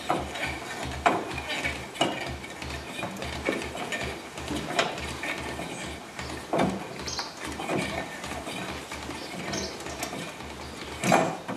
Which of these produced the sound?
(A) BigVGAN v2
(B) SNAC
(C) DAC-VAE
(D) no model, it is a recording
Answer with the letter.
D